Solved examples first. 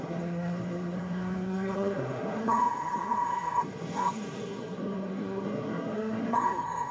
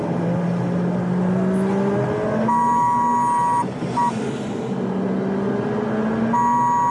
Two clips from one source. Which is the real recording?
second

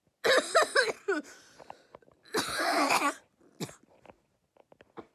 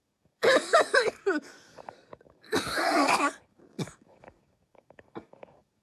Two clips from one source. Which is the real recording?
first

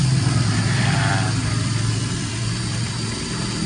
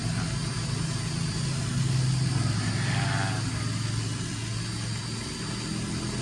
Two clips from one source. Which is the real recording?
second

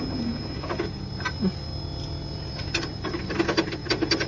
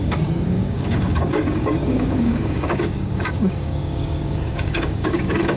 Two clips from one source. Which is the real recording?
first